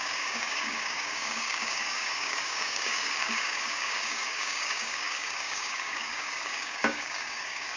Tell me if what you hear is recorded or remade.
remade